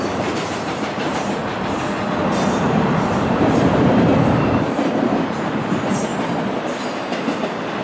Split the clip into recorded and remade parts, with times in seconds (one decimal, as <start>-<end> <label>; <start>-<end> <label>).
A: 0.0-1.4 remade; 1.4-2.6 recorded; 2.6-6.1 remade; 6.1-7.8 recorded